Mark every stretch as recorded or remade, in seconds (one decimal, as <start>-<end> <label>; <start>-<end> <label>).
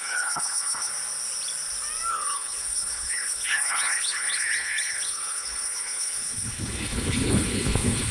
0.0-0.9 remade; 0.9-2.1 recorded; 2.1-8.1 remade